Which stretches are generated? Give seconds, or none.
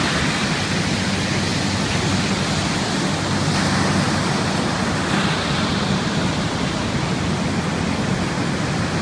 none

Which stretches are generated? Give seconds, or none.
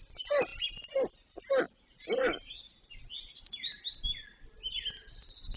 none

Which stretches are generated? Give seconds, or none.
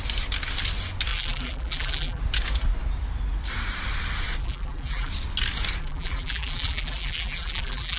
1.1-2.2 (vocoder, BigVGAN v2); 4.4-5.1; 5.8-8.0